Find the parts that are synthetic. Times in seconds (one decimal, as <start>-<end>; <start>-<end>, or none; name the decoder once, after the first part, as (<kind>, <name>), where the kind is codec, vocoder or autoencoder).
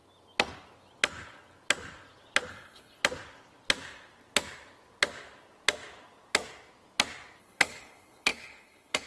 2.5-3.0 (codec, HILCodec); 7.4-9.1